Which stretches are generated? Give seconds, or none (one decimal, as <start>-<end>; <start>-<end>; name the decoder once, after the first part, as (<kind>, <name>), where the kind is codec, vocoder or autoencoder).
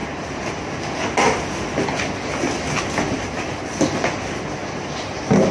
none